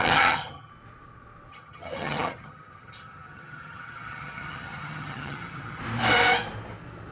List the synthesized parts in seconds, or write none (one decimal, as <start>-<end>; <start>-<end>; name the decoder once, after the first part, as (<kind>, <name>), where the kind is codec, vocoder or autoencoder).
0.0-0.7 (vocoder, HiFi-GAN); 1.5-5.8